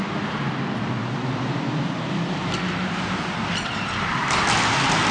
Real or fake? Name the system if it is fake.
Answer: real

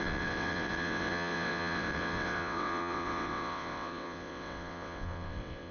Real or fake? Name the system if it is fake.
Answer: fake, vocoder, WaveNeXt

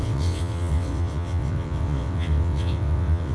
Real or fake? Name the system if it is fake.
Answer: fake, vocoder, WaveNeXt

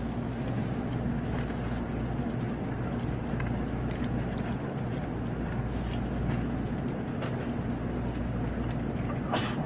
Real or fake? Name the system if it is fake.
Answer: real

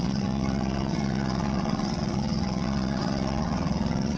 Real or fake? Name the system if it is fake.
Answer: fake, vocoder, WaveNeXt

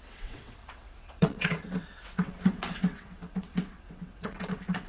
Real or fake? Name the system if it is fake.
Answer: fake, vocoder, WaveNeXt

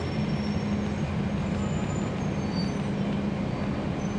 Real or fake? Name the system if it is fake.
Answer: real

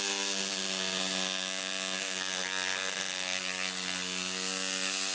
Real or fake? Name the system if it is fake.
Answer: real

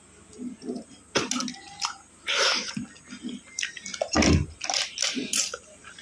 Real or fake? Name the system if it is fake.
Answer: real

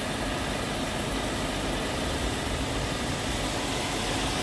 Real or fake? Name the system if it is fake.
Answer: real